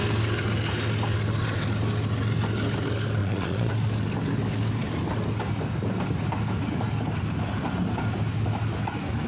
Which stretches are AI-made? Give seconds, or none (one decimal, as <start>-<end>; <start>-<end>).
3.2-3.7